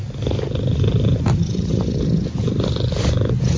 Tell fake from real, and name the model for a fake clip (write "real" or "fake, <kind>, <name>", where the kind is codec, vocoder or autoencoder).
real